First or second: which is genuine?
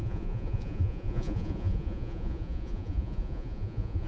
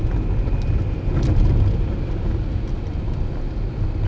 second